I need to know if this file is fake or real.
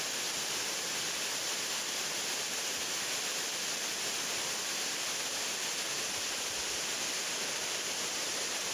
real